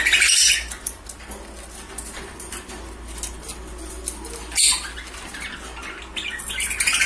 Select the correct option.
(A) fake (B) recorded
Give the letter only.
B